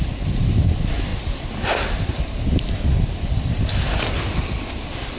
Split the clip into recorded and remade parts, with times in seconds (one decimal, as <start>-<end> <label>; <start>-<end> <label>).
0.0-1.1 remade; 1.1-4.2 recorded; 4.2-5.2 remade